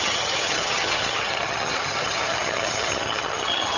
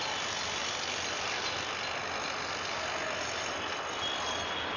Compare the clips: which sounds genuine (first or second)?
second